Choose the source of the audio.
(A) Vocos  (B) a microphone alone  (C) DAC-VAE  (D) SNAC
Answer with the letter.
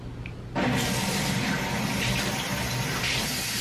B